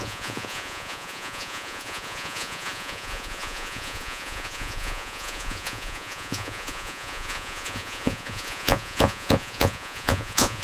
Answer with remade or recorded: remade